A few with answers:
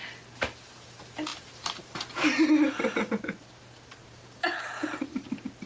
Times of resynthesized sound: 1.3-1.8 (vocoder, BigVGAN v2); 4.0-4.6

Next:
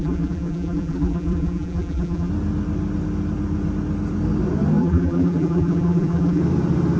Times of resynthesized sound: 0.0-2.3 (vocoder, BigVGAN v2); 4.8-6.4

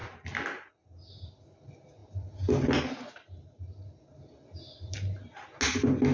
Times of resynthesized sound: none